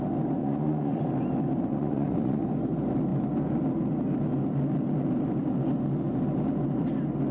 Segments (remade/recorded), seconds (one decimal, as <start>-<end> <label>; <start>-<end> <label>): 0.0-0.4 recorded; 0.4-1.0 remade; 1.0-1.7 recorded; 1.7-2.4 remade; 2.4-7.3 recorded